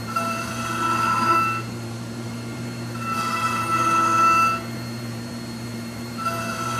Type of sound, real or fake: fake